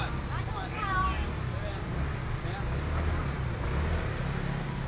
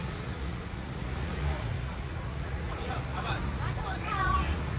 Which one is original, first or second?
first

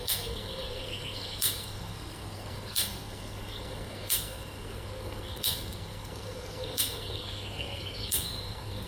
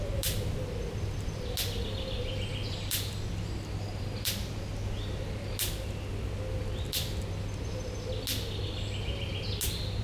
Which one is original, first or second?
second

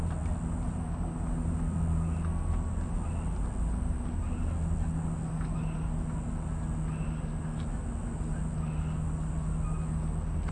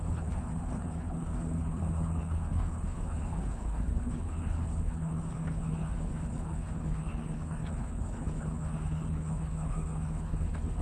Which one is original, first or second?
first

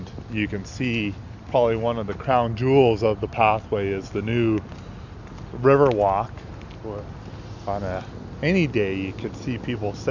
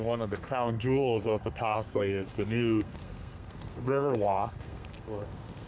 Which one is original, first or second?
first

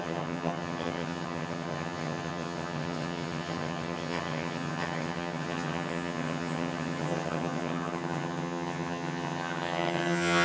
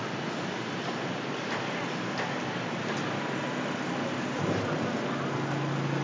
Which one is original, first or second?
second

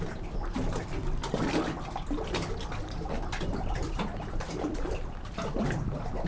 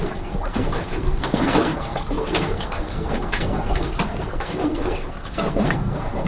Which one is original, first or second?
first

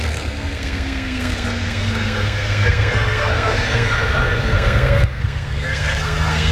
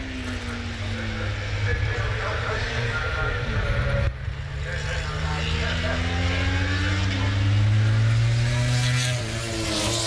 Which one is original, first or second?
second